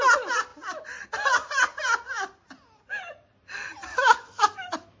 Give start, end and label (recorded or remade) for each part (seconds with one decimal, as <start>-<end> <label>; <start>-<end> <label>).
0.0-3.9 recorded; 3.9-5.0 remade